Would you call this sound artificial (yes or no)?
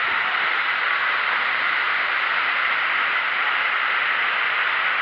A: yes